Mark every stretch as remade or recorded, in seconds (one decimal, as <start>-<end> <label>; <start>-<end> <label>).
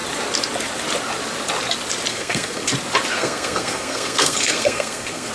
0.0-2.1 recorded; 2.1-2.7 remade; 2.7-3.1 recorded; 3.1-5.3 remade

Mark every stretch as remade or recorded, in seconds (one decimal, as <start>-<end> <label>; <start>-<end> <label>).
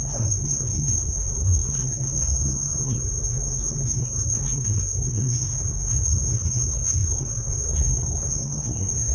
0.0-9.1 remade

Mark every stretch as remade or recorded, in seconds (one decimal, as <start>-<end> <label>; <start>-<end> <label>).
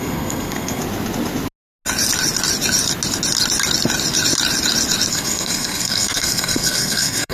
0.0-0.8 remade; 0.8-5.1 recorded; 5.1-7.3 remade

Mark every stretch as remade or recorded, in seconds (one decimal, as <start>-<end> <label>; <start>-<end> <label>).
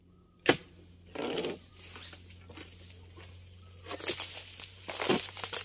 0.0-5.6 recorded